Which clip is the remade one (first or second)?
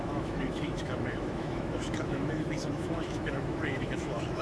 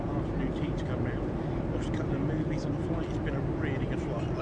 first